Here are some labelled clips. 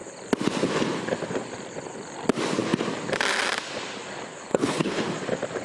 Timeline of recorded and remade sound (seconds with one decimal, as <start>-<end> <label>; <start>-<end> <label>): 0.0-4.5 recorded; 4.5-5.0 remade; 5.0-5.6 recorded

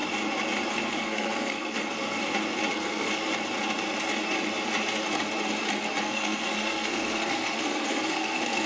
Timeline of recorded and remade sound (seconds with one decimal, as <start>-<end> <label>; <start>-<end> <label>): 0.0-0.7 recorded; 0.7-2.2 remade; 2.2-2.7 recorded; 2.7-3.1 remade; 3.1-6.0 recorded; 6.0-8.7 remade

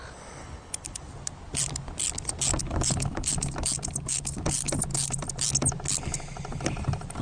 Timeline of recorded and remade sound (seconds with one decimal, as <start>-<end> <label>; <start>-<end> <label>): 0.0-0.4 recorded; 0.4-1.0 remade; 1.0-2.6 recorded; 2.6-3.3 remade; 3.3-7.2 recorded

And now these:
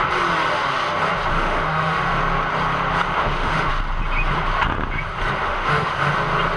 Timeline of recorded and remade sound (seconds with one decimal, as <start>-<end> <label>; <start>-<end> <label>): 0.0-1.3 recorded; 1.3-2.2 remade; 2.2-3.1 recorded; 3.1-3.7 remade; 3.7-5.4 recorded; 5.4-6.1 remade; 6.1-6.6 recorded